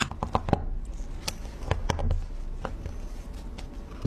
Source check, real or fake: real